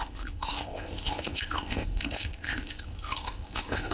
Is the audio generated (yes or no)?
yes